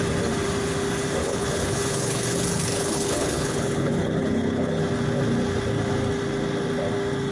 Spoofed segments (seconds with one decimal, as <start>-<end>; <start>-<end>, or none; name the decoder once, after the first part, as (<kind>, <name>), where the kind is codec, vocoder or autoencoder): 1.2-4.8 (codec, HILCodec)